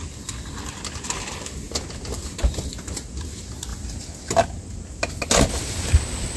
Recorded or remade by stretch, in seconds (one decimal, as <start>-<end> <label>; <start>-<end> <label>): 0.0-6.4 recorded